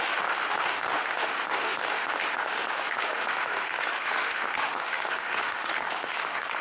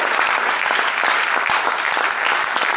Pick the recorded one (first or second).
second